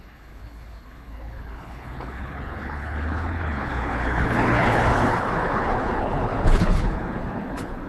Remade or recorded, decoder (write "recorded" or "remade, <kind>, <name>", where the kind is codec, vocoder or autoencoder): remade, codec, HILCodec